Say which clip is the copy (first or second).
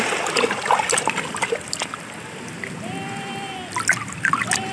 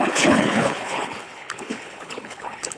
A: second